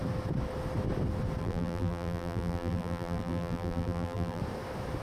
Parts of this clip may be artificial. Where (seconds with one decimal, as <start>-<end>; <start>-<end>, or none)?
1.4-4.4